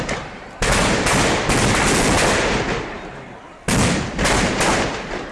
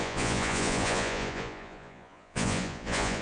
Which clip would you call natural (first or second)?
first